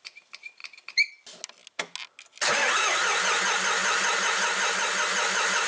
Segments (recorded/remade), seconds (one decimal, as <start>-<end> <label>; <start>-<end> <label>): 0.0-5.7 recorded